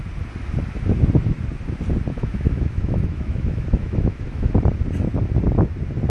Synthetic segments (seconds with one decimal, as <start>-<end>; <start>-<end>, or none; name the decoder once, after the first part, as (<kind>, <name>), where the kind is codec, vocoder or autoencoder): 2.1-4.5 (autoencoder, DAC-VAE)